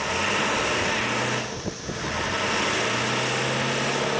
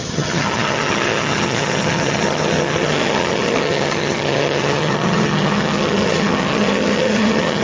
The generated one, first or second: second